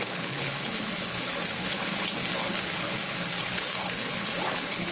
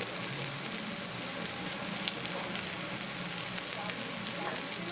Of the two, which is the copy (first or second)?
first